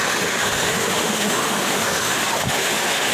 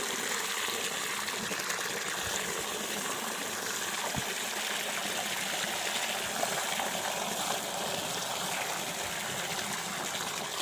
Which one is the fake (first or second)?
first